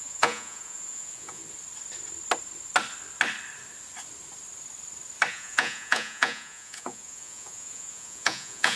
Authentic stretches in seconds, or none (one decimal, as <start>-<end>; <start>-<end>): 1.4-5.3